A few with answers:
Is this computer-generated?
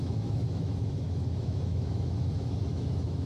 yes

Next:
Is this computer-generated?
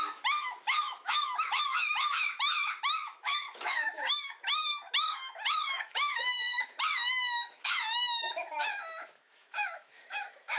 yes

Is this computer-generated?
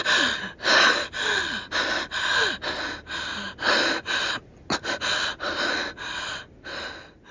no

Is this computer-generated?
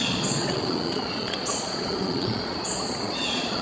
yes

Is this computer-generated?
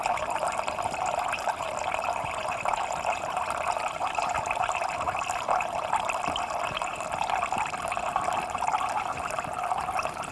no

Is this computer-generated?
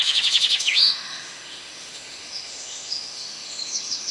yes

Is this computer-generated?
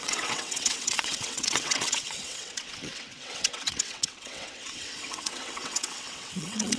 yes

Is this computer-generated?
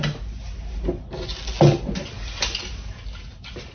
no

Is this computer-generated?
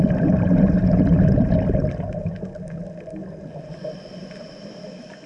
no